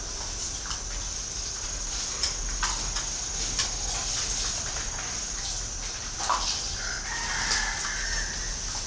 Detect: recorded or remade recorded